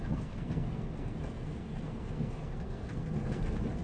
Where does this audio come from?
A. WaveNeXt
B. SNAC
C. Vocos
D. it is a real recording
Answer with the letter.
B